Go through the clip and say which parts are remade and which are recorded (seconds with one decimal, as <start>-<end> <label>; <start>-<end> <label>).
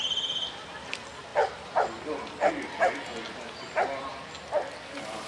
0.0-5.3 recorded